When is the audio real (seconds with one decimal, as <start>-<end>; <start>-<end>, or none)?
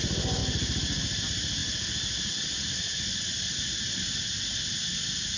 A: 0.0-5.4